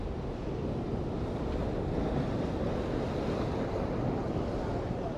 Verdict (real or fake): real